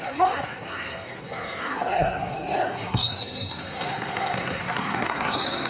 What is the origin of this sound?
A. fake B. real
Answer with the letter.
A